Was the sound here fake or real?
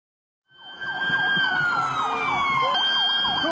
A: real